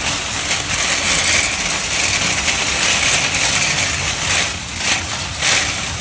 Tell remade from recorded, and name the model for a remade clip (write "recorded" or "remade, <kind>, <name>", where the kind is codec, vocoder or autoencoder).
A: recorded